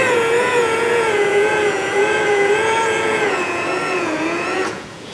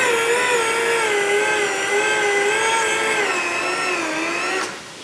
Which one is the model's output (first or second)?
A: first